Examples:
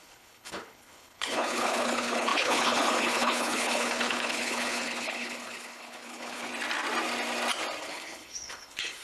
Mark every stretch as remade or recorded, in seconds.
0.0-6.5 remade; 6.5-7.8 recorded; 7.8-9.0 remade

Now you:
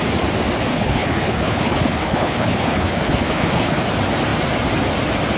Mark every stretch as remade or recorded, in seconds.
0.0-0.7 recorded; 0.7-3.9 remade; 3.9-5.4 recorded

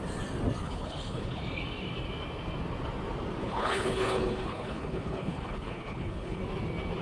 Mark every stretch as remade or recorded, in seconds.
0.0-0.6 recorded; 0.6-1.4 remade; 1.4-3.4 recorded; 3.4-6.4 remade; 6.4-7.0 recorded